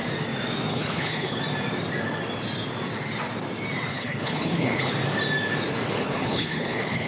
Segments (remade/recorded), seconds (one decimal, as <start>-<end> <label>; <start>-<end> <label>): 0.0-0.7 recorded; 0.7-1.4 remade; 1.4-3.9 recorded; 3.9-4.9 remade; 4.9-5.9 recorded; 5.9-7.1 remade